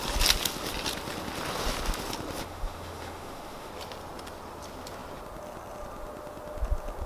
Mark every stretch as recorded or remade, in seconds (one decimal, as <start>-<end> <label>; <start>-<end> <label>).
0.0-2.4 recorded; 2.4-3.7 remade; 3.7-7.1 recorded